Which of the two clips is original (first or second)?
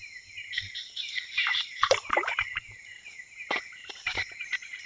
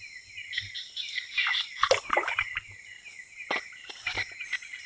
second